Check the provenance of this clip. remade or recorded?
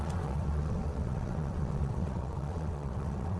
remade